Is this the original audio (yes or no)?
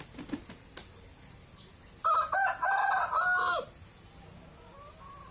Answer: yes